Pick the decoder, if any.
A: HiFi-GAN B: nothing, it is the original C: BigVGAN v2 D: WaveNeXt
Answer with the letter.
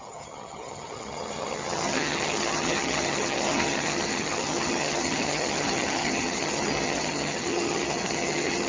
A